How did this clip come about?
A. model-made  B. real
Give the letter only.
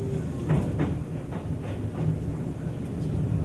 B